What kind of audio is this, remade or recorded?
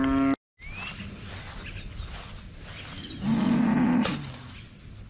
recorded